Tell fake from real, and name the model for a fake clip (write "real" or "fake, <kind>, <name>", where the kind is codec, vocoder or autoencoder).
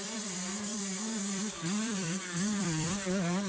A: fake, vocoder, BigVGAN v2